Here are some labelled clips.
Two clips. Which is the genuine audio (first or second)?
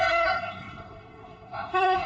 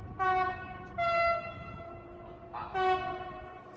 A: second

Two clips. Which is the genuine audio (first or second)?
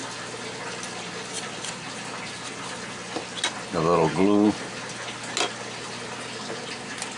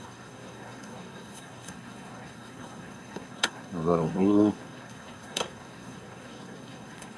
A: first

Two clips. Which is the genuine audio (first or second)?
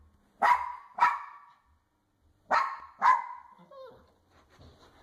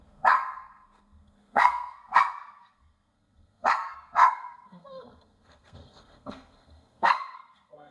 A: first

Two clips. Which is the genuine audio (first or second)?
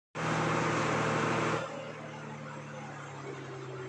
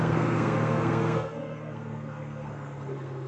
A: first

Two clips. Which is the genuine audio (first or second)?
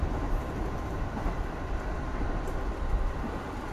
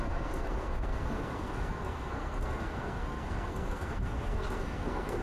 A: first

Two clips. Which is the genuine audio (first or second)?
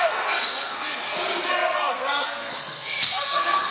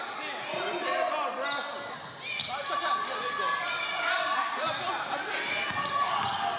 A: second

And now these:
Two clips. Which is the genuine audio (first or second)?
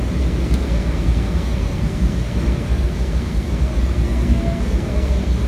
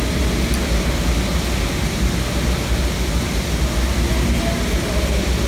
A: second